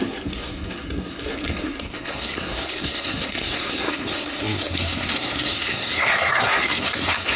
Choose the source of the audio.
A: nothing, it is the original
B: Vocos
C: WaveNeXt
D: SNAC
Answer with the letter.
D